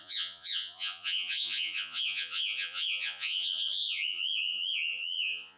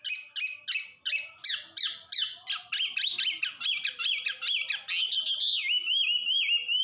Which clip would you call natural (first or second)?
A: second